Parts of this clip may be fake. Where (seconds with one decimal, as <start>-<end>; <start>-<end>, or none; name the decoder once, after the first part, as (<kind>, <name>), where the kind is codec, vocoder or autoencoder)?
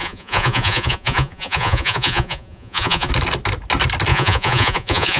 0.0-3.1 (vocoder, Vocos); 4.1-5.2